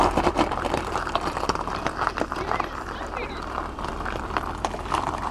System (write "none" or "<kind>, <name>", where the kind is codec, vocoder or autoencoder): vocoder, BigVGAN v2